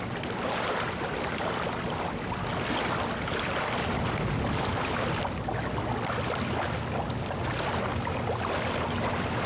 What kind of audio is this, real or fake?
real